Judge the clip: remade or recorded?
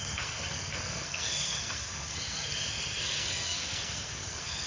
remade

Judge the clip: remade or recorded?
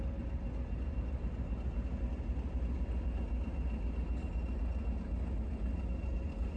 recorded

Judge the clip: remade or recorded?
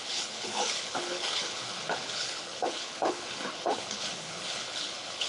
remade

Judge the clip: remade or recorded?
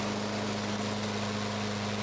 recorded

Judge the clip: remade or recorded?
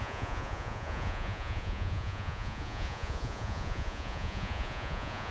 remade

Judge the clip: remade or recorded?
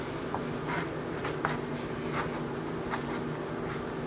recorded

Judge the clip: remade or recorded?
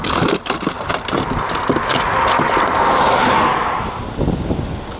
recorded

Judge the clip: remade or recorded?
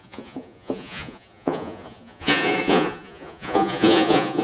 remade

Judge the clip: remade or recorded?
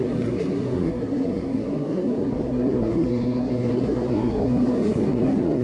remade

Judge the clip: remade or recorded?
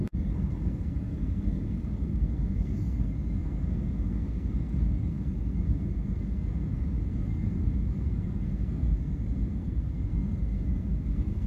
remade